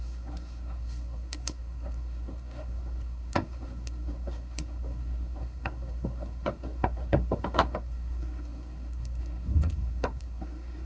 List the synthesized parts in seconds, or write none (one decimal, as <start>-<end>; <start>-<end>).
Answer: 0.0-10.9